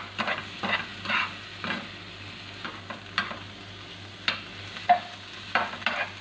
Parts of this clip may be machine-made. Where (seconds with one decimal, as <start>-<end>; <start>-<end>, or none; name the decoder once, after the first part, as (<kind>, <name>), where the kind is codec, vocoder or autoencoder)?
none

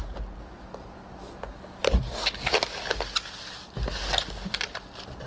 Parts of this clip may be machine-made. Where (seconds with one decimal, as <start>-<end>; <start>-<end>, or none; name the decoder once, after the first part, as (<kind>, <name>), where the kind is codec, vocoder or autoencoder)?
none

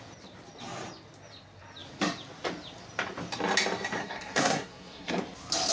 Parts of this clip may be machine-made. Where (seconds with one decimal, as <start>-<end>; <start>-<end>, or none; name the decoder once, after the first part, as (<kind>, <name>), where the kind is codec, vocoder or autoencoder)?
4.0-5.2 (codec, SNAC)